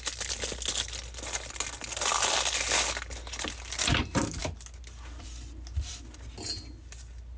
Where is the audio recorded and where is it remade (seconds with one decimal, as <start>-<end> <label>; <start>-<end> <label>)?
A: 0.0-7.4 recorded